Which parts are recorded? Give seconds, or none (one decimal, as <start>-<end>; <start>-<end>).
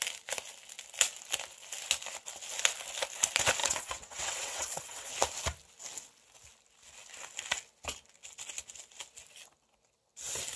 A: 0.0-3.6; 5.1-10.6